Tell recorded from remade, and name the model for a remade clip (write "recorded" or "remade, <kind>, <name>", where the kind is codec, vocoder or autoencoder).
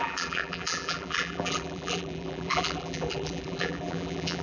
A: remade, vocoder, BigVGAN v2